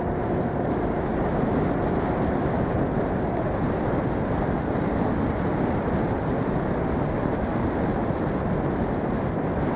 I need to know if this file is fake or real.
real